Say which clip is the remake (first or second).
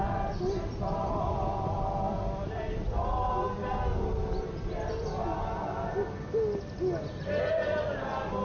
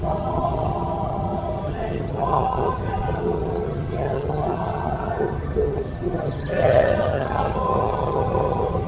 second